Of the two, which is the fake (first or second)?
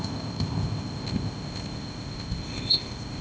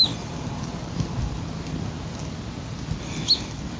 first